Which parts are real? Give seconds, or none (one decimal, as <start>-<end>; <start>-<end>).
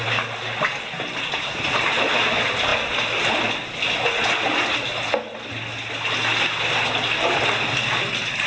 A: 0.0-8.5